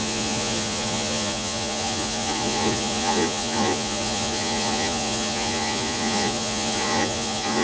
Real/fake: fake